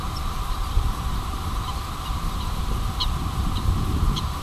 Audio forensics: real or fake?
fake